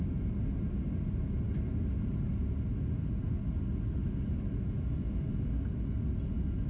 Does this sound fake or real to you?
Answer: real